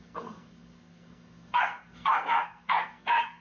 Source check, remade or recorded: remade